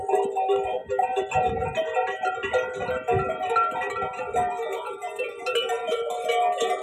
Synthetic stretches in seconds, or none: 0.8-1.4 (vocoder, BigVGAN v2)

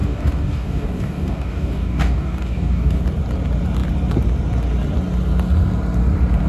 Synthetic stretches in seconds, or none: 0.0-3.0 (codec, DAC)

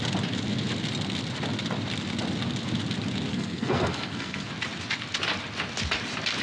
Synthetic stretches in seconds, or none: 3.3-4.5 (codec, SNAC)

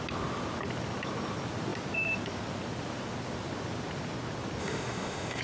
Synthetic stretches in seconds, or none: 4.6-5.4 (autoencoder, DAC-VAE)

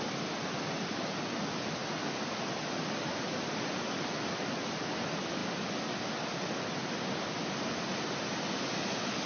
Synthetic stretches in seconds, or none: none

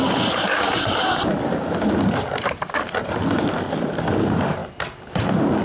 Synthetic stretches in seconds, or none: none

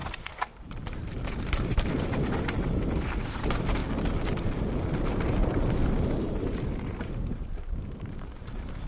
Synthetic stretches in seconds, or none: 0.6-3.8 (vocoder, BigVGAN v2); 5.0-5.4; 6.2-8.9

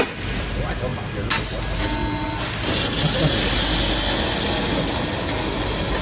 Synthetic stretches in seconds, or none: none